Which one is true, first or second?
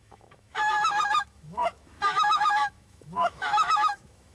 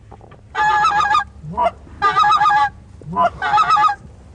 second